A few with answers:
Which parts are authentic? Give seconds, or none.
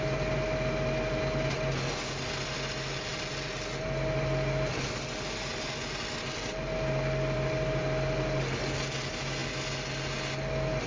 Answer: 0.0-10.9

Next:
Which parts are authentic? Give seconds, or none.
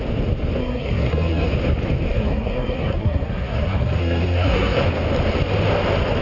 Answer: 0.0-0.6; 1.5-2.1; 4.8-6.2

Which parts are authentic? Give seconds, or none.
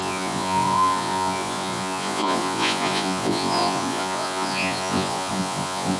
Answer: none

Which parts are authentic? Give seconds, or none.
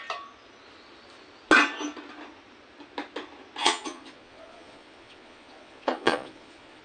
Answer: 0.0-3.6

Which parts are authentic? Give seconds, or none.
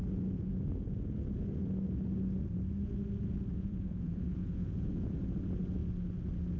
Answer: 1.0-3.5; 5.2-6.6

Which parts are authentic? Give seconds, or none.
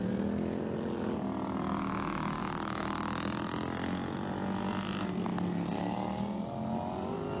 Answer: 0.0-7.4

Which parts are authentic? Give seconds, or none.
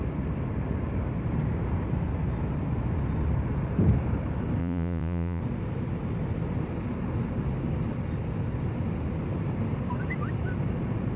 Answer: 0.0-4.6; 5.4-11.2